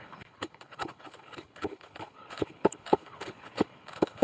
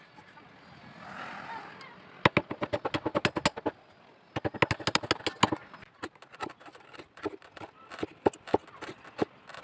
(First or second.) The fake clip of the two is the first